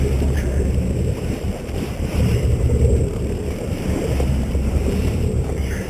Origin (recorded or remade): remade